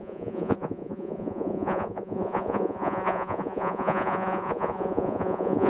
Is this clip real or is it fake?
fake